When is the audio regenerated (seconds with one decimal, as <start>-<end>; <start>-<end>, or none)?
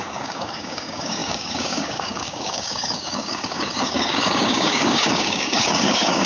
0.0-6.3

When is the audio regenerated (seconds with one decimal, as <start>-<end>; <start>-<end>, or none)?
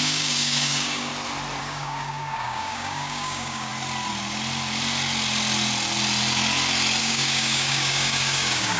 0.0-1.1; 1.6-3.7; 7.0-8.8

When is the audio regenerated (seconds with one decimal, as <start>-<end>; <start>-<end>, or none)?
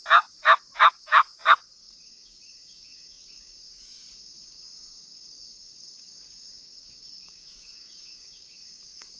0.0-0.4; 0.9-9.2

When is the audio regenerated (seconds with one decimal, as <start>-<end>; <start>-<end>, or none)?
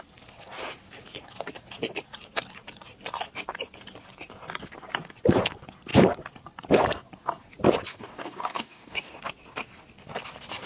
7.9-9.2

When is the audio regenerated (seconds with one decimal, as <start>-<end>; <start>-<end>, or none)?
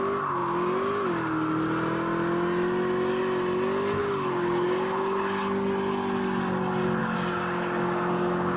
4.0-5.2; 7.0-8.6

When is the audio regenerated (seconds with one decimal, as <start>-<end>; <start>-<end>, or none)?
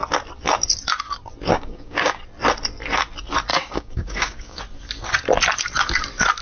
1.5-2.2; 3.5-4.6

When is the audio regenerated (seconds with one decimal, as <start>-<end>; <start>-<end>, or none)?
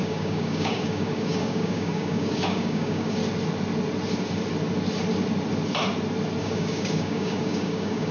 0.0-3.2; 6.4-8.1